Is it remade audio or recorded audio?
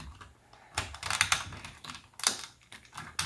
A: recorded